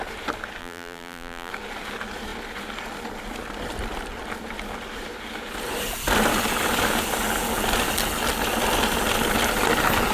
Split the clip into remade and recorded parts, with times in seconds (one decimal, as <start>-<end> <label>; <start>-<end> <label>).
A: 0.0-0.6 recorded; 0.6-1.5 remade; 1.5-10.1 recorded